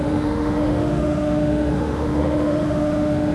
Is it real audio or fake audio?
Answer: fake